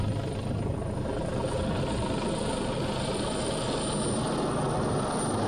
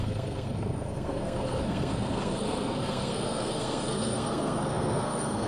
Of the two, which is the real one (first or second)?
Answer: first